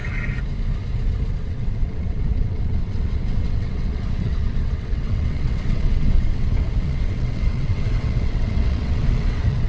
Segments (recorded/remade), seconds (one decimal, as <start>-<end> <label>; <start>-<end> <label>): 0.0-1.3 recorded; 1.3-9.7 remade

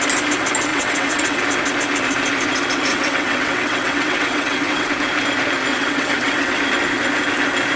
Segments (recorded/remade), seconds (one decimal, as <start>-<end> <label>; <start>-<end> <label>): 0.0-0.7 recorded; 0.7-1.4 remade; 1.4-2.9 recorded; 2.9-4.9 remade; 4.9-5.7 recorded; 5.7-6.6 remade; 6.6-7.8 recorded

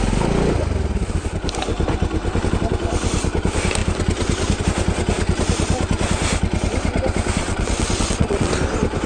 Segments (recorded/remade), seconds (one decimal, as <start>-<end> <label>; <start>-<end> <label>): 0.0-7.4 recorded; 7.4-8.5 remade; 8.5-9.1 recorded

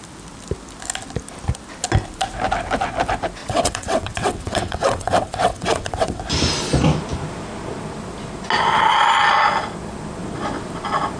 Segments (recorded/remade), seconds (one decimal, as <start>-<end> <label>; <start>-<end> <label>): 0.0-3.4 recorded; 3.4-6.2 remade; 6.2-11.2 recorded